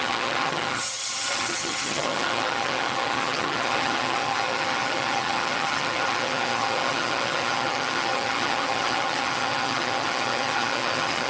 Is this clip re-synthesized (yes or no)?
yes